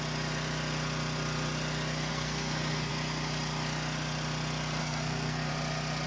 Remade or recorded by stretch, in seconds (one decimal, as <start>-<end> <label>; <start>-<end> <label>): 0.0-2.1 recorded; 2.1-2.9 remade; 2.9-4.8 recorded; 4.8-5.5 remade; 5.5-6.1 recorded